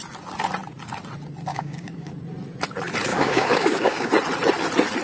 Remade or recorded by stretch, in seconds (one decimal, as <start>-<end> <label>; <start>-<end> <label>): 0.0-1.5 recorded; 1.5-2.1 remade; 2.1-3.1 recorded; 3.1-4.1 remade; 4.1-5.0 recorded